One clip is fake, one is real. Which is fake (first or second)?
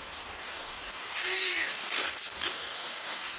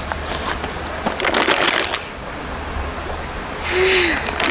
first